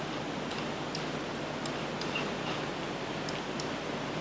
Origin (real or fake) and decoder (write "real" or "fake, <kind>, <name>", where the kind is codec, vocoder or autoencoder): real